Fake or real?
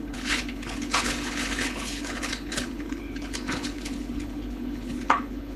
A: fake